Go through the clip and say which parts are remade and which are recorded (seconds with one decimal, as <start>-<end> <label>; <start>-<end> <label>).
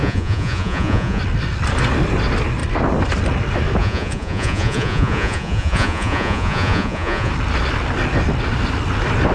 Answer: 0.0-1.2 remade; 1.2-3.8 recorded; 3.8-7.3 remade; 7.3-9.3 recorded